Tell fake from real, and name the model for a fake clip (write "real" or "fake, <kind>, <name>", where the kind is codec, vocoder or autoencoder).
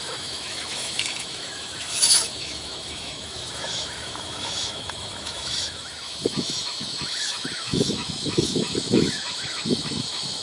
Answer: fake, autoencoder, DAC-VAE